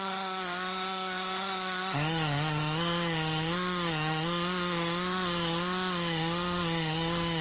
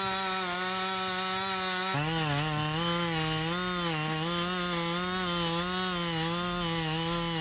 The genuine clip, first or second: second